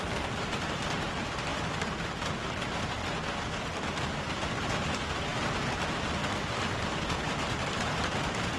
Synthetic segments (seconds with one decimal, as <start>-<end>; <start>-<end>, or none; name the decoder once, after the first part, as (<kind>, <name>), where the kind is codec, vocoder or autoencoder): none